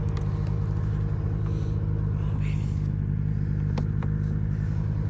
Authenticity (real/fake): real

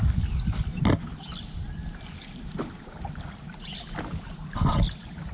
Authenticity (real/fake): real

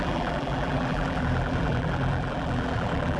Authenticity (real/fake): fake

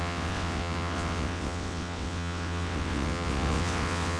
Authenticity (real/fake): fake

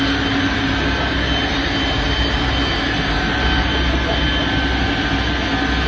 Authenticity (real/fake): real